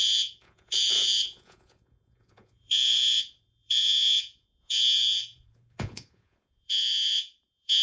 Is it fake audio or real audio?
fake